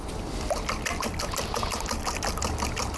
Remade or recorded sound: recorded